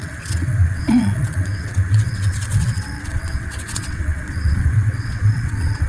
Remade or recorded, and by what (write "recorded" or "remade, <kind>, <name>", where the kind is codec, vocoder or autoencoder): remade, vocoder, WaveNeXt